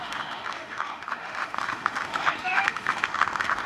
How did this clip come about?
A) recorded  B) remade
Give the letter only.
B